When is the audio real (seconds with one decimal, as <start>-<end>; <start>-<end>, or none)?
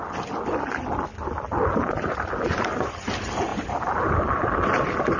1.1-3.1; 3.5-4.1